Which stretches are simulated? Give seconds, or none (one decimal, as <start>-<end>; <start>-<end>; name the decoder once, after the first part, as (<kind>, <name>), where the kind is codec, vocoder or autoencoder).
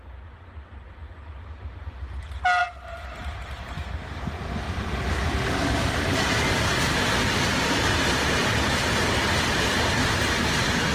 none